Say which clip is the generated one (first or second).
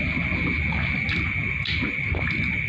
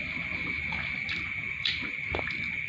second